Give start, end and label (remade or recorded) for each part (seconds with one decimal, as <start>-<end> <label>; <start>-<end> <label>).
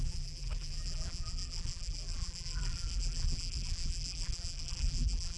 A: 0.0-5.4 remade